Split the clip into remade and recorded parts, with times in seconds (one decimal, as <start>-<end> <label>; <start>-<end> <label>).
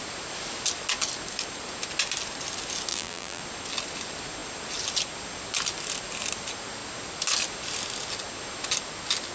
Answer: 0.0-2.9 recorded; 2.9-3.4 remade; 3.4-9.3 recorded